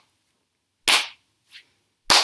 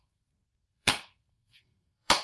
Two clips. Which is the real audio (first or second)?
first